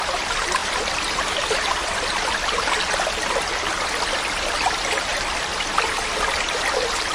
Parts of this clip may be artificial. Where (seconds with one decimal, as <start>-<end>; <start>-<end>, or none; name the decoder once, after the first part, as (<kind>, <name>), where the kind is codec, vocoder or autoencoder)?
0.6-2.2 (vocoder, BigVGAN v2); 5.1-6.1